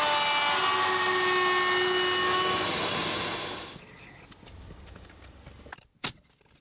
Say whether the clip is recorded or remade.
recorded